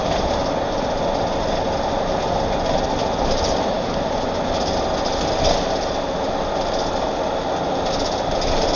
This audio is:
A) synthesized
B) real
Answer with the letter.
B